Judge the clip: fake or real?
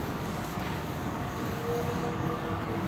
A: fake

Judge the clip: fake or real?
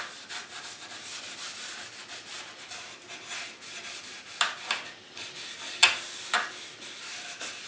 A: real